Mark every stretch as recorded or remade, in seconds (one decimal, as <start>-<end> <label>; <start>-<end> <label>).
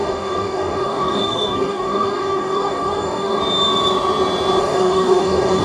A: 0.0-3.4 remade; 3.4-4.6 recorded; 4.6-5.6 remade